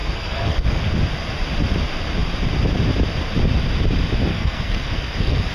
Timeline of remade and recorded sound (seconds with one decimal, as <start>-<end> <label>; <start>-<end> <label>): 0.0-0.8 remade; 0.8-4.3 recorded; 4.3-5.5 remade